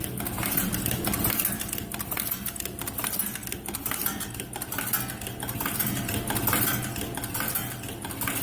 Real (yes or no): yes